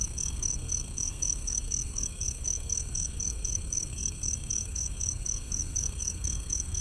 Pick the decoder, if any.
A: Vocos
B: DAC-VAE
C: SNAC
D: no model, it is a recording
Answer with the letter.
C